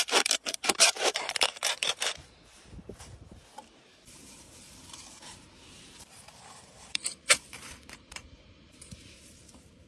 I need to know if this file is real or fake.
fake